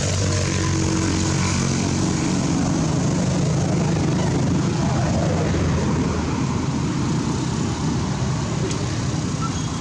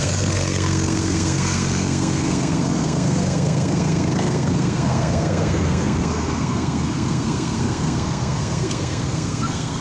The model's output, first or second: second